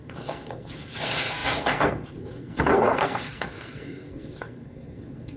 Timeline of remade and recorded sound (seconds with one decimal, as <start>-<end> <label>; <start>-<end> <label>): 0.0-5.4 remade